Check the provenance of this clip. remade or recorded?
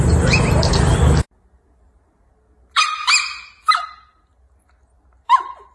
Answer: recorded